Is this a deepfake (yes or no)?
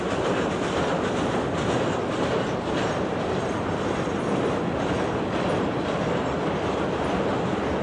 no